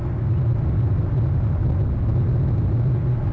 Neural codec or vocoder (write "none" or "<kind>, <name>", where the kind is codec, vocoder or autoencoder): none